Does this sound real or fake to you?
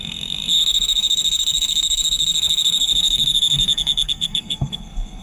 fake